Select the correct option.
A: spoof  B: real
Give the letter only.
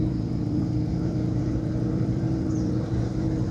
A